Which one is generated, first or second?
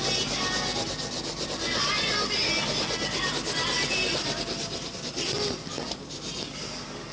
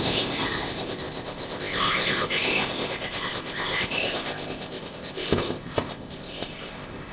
second